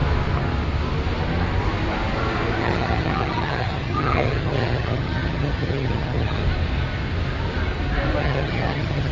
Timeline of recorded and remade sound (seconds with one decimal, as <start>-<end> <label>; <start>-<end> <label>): 0.0-2.6 recorded; 2.6-6.4 remade; 6.4-8.2 recorded; 8.2-9.1 remade